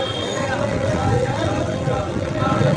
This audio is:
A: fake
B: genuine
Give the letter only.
A